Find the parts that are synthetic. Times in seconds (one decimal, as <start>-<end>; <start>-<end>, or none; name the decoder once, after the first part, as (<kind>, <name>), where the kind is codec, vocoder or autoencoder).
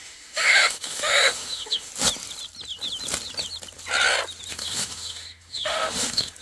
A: 0.0-1.9 (autoencoder, DAC-VAE); 4.5-6.4